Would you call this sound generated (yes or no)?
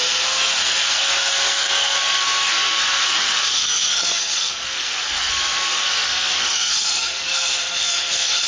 yes